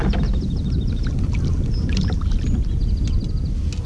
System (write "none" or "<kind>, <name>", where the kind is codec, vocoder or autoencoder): none